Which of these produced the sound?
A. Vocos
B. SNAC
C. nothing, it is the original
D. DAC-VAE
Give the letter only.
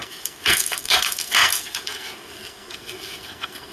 B